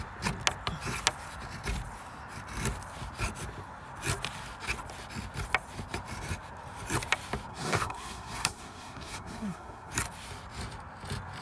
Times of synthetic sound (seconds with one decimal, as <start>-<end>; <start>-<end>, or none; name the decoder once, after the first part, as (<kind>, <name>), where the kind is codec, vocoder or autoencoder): 7.5-9.9 (codec, SNAC)